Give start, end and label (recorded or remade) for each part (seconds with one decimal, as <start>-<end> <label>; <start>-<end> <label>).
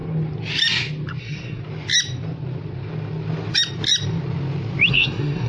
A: 0.0-1.2 recorded; 1.2-1.6 remade; 1.6-4.9 recorded; 4.9-5.5 remade